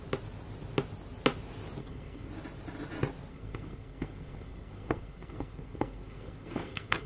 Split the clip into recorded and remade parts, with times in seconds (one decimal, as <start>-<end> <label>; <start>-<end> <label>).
0.0-1.8 recorded; 1.8-2.3 remade; 2.3-3.3 recorded; 3.3-7.1 remade